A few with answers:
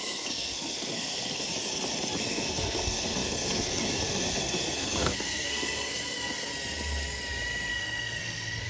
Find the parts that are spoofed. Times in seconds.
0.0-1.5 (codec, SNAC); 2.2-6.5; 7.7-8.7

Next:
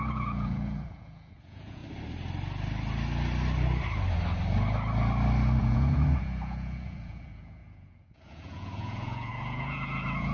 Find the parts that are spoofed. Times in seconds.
0.0-1.8 (vocoder, Vocos); 5.6-10.3

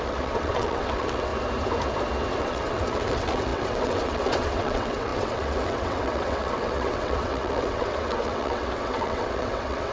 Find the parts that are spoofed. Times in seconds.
0.0-1.3 (vocoder, WaveNeXt); 2.4-9.9

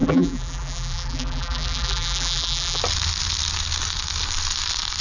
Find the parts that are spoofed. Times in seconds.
0.0-2.8 (vocoder, BigVGAN v2)

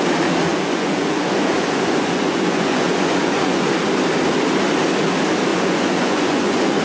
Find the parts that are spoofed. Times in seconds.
0.5-3.7 (vocoder, Vocos); 5.5-6.8